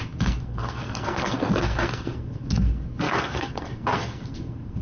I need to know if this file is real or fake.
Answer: fake